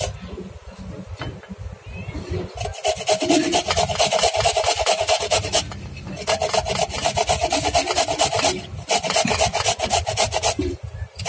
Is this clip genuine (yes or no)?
yes